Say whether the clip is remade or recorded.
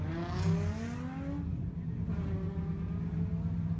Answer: recorded